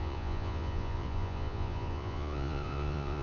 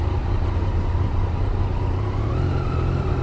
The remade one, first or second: first